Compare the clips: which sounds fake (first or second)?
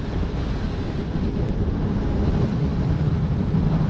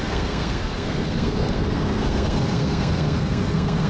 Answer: second